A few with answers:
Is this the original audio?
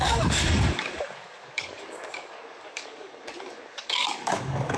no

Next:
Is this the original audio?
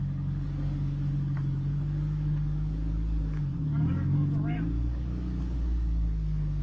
no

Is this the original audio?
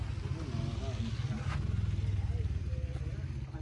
yes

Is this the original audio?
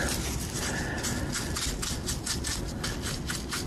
yes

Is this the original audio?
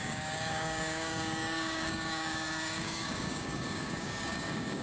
no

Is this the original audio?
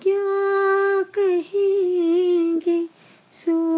no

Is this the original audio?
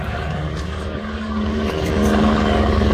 no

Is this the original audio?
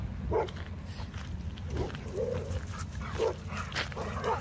yes